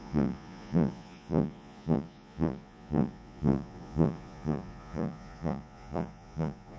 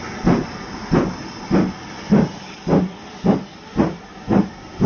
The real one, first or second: second